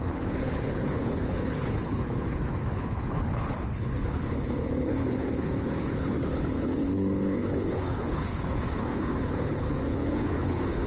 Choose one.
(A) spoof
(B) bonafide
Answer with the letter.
A